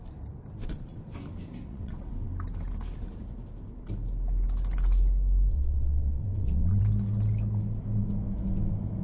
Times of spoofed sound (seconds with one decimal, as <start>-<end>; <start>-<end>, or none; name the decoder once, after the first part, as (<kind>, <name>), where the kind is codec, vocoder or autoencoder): 1.6-2.3 (vocoder, WaveNeXt); 5.5-6.8